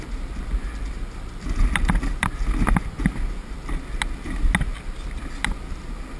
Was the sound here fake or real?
real